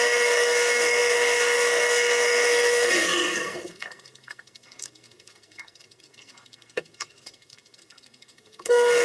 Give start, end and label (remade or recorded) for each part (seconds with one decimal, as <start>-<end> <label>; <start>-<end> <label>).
0.0-9.0 remade